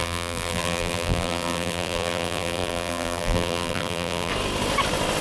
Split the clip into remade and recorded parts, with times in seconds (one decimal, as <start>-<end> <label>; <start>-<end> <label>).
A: 0.0-4.3 remade; 4.3-5.2 recorded